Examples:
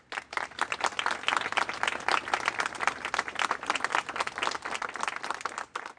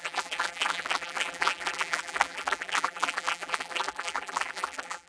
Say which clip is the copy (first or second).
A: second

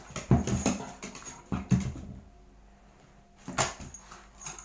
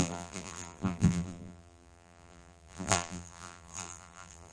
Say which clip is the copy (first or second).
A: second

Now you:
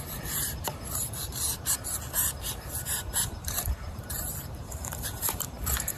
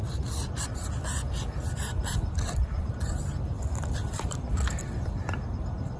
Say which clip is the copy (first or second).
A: first